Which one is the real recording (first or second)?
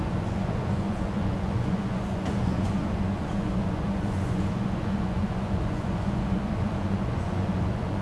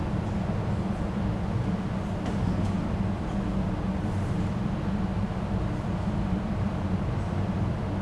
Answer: second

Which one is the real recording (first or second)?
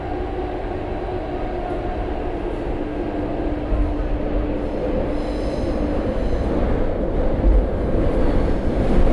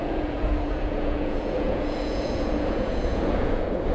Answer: first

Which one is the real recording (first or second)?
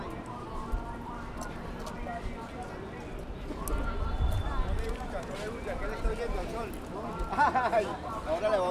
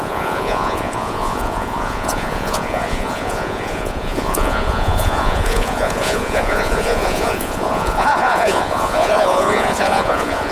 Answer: first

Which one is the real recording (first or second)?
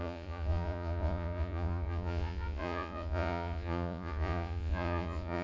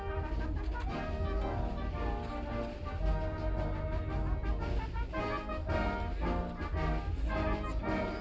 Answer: second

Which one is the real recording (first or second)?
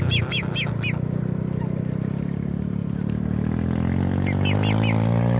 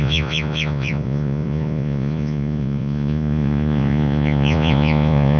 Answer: first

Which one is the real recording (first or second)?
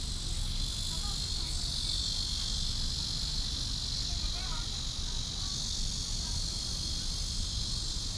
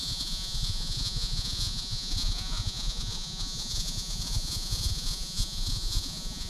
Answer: first